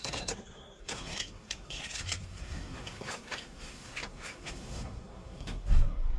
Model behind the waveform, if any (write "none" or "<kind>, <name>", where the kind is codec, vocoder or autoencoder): codec, SNAC